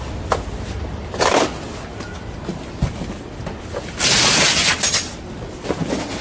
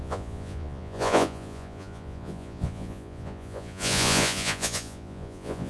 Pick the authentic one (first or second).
first